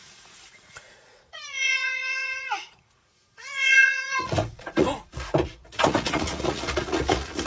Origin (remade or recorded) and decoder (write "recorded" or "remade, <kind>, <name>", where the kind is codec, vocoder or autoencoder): remade, vocoder, Vocos